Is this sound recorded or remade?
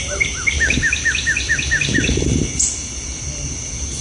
recorded